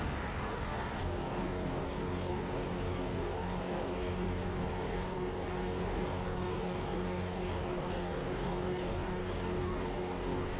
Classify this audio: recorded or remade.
remade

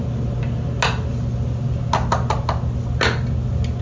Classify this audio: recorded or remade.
recorded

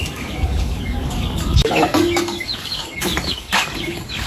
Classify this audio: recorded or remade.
remade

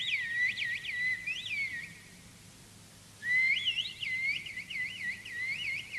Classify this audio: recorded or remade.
recorded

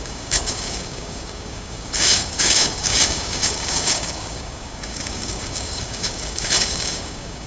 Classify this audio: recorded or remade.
remade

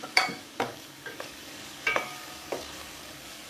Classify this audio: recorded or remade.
remade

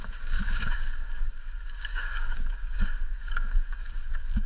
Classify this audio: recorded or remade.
remade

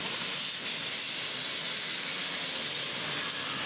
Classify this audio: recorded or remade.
recorded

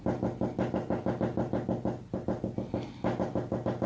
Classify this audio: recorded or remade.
recorded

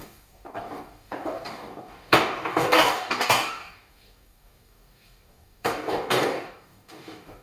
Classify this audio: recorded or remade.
remade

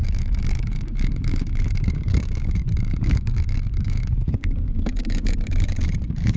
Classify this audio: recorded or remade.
remade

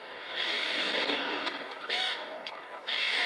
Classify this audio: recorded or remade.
remade